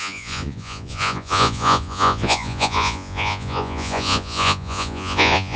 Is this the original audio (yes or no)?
no